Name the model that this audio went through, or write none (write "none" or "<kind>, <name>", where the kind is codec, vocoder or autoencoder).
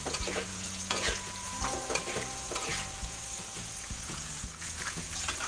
vocoder, Vocos